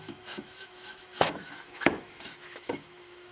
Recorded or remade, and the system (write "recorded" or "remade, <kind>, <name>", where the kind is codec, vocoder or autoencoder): remade, autoencoder, DAC-VAE